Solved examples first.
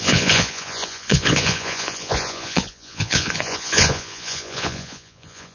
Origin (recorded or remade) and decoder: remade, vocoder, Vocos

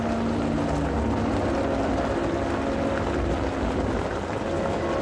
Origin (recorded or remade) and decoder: recorded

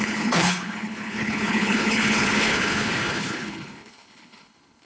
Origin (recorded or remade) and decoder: remade, codec, HILCodec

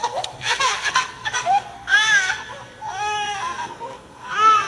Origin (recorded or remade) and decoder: remade, codec, SNAC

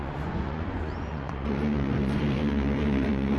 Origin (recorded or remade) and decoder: remade, vocoder, Vocos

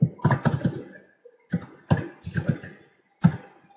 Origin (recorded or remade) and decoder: recorded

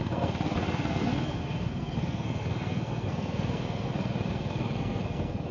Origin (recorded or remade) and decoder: remade, codec, SNAC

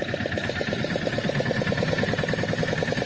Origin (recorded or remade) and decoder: recorded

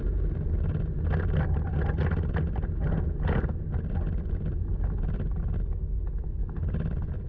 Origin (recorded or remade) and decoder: recorded